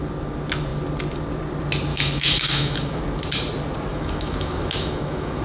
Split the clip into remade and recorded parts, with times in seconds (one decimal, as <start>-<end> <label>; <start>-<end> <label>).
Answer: 0.0-1.9 recorded; 1.9-3.0 remade; 3.0-3.9 recorded; 3.9-5.4 remade